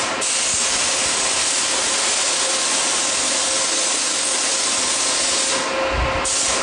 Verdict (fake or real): real